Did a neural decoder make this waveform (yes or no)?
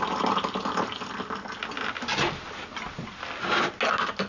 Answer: no